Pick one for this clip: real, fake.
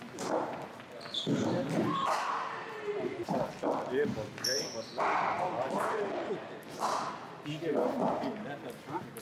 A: real